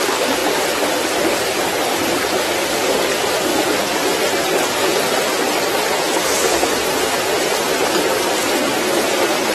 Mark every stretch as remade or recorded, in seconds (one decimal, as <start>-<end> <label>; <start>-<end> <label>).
0.0-0.4 recorded; 0.4-2.9 remade; 2.9-9.5 recorded